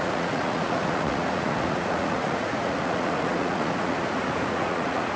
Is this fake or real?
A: fake